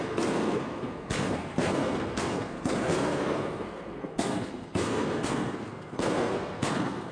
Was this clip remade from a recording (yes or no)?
yes